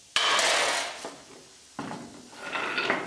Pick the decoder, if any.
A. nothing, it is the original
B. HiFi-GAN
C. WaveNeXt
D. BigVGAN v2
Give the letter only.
A